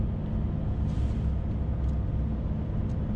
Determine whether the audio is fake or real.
real